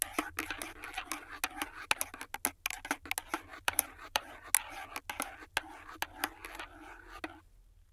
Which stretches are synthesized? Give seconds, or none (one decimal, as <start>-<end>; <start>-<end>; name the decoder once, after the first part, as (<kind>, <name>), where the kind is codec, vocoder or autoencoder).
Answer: 3.5-4.3 (vocoder, BigVGAN v2)

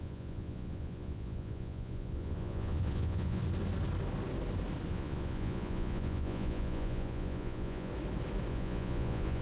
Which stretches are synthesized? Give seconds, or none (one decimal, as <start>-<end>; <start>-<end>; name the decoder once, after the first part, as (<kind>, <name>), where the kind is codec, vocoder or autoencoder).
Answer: 0.0-3.4 (vocoder, Vocos); 4.9-7.9; 8.5-9.4

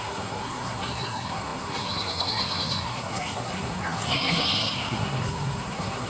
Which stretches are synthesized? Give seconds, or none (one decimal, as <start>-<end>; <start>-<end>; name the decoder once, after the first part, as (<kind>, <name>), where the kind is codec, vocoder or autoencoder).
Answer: 0.0-6.1 (codec, SNAC)